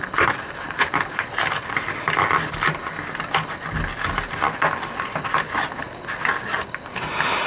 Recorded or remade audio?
recorded